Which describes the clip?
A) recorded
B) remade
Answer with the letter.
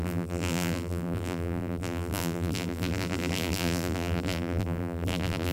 B